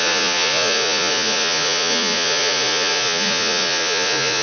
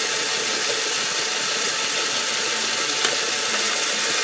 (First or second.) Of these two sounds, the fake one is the first